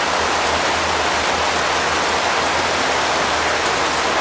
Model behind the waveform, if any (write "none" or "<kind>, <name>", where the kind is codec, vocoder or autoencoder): none